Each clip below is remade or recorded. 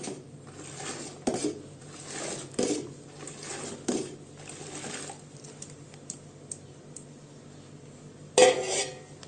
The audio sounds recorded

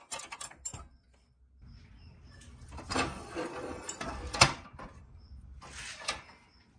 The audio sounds recorded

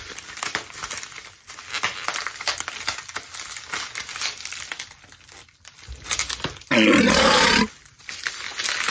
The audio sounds recorded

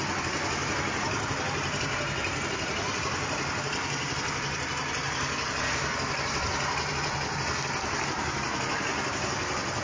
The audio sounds recorded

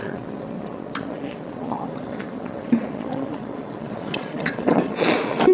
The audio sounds remade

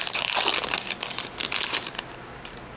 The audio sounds recorded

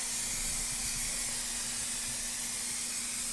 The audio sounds recorded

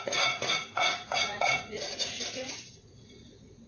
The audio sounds remade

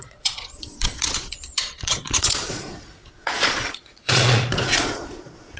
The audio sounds remade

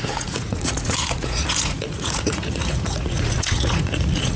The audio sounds remade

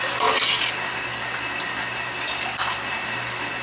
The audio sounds recorded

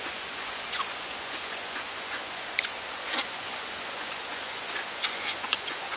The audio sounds remade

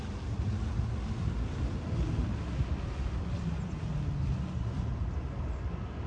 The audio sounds recorded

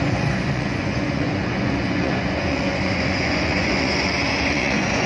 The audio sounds remade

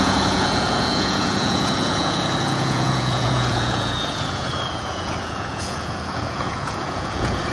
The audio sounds remade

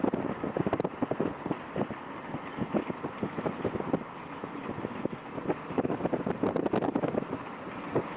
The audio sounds recorded